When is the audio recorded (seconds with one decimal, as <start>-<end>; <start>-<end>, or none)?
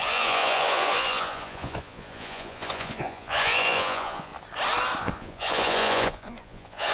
4.3-5.0